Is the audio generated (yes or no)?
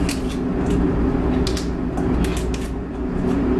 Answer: no